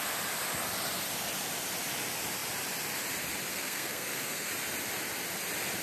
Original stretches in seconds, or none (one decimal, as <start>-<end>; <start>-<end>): 0.0-3.5; 4.5-5.8